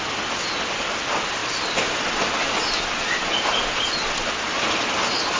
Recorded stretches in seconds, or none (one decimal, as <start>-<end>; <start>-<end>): 0.0-5.4